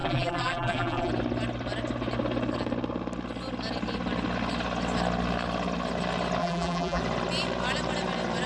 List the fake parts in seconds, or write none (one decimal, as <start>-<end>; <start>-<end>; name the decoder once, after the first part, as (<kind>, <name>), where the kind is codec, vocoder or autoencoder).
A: 0.0-1.1 (vocoder, BigVGAN v2); 6.4-7.0